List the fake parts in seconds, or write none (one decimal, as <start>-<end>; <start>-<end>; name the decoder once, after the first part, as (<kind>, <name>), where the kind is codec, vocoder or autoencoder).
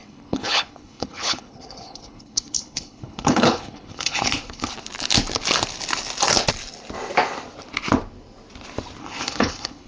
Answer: 0.0-4.7 (codec, HILCodec); 9.0-9.9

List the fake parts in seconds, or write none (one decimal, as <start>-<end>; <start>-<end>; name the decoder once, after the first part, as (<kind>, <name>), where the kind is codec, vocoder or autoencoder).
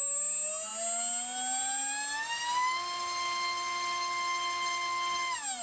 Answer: none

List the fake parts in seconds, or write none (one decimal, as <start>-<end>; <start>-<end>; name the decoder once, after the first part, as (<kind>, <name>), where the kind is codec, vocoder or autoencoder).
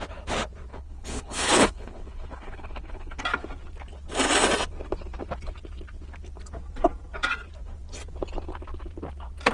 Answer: 0.7-3.2 (codec, HILCodec)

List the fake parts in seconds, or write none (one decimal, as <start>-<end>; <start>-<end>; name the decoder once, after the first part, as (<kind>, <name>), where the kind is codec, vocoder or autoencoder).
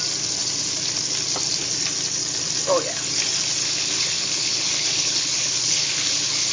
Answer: 3.6-6.5 (codec, HILCodec)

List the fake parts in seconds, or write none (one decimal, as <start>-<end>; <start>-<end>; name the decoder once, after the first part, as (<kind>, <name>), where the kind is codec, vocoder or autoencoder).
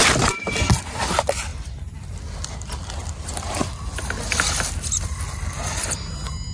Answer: none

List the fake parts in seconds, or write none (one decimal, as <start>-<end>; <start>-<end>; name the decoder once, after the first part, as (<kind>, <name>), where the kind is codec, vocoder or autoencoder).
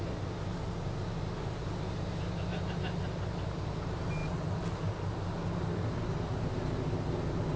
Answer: none